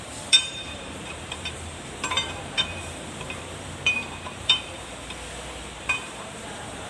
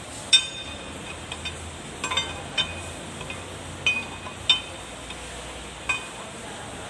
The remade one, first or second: first